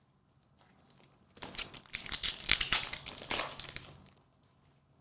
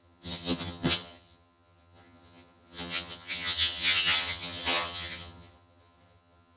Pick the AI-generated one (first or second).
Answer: second